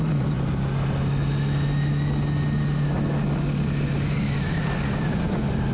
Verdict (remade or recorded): recorded